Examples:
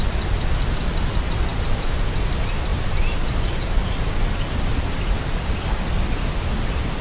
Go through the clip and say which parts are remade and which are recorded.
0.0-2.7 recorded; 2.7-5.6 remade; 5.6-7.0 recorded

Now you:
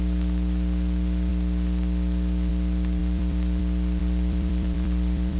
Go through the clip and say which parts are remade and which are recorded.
0.0-3.0 recorded; 3.0-3.6 remade; 3.6-4.0 recorded; 4.0-5.4 remade